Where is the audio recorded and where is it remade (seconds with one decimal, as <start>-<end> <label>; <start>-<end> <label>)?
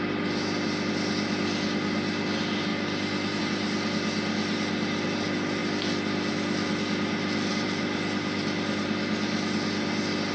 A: 0.0-10.3 recorded